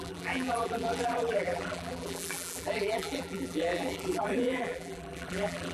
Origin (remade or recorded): remade